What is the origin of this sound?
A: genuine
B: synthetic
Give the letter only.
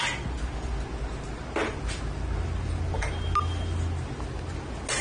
A